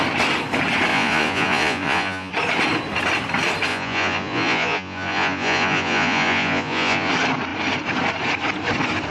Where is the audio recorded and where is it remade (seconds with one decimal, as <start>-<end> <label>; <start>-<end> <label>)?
0.0-0.9 recorded; 0.9-2.3 remade; 2.3-3.7 recorded; 3.7-7.1 remade; 7.1-9.1 recorded